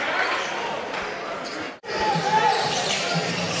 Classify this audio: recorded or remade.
recorded